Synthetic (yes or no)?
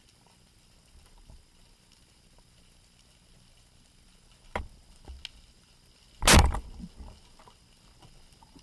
no